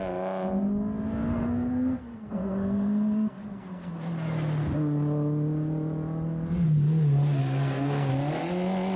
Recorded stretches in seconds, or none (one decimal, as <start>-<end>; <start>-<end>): 0.0-1.3; 3.9-7.4; 8.1-9.0